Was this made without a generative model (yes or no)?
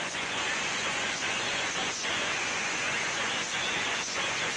no